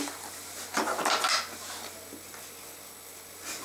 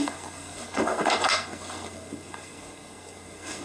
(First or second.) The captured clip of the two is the first